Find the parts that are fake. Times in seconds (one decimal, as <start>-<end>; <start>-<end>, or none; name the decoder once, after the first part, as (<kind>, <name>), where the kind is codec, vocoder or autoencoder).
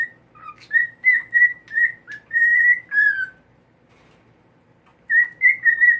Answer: 0.8-1.6 (autoencoder, DAC-VAE)